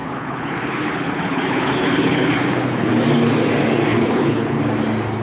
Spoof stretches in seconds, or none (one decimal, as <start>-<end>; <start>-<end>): 0.0-2.9; 3.9-4.6